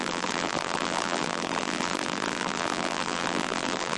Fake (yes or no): yes